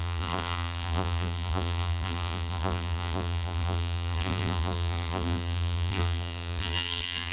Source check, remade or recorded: remade